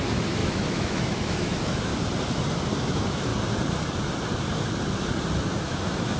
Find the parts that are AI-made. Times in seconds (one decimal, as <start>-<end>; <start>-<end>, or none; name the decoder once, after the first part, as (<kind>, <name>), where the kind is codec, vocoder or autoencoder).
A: 0.0-1.9 (autoencoder, DAC-VAE); 2.9-3.3; 5.6-6.2